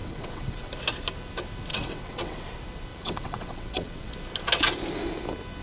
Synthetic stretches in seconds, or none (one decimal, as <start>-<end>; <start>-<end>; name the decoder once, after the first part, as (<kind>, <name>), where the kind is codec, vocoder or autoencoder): 0.0-0.7 (vocoder, WaveNeXt); 1.7-2.4; 2.9-4.1